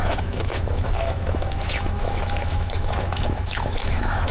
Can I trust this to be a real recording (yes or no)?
no